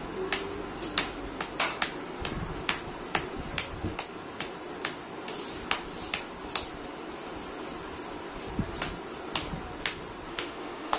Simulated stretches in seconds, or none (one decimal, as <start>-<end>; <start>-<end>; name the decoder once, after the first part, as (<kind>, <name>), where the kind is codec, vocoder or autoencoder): 10.3-11.0 (autoencoder, DAC-VAE)